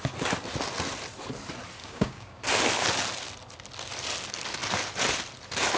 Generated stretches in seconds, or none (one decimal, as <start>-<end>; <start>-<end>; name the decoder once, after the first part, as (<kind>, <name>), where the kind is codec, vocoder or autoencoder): 1.8-2.4 (codec, DAC)